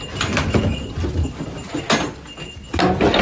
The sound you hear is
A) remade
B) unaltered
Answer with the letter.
B